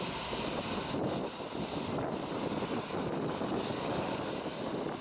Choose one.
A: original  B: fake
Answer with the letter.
A